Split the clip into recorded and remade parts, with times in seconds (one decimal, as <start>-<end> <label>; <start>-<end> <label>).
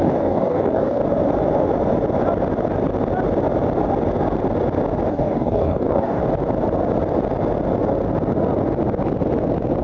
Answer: 0.0-1.0 remade; 1.0-5.1 recorded; 5.1-6.2 remade; 6.2-9.8 recorded